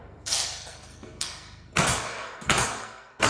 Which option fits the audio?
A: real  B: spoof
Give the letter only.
B